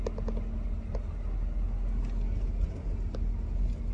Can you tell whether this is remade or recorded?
recorded